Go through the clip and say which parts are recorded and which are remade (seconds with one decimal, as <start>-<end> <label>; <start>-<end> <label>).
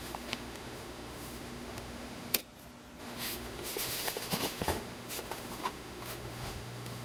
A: 0.0-2.4 remade; 2.4-3.0 recorded; 3.0-7.0 remade